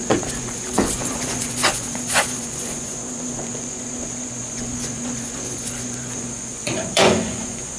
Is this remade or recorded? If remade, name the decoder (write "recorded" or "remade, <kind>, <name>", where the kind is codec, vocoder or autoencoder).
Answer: remade, vocoder, Vocos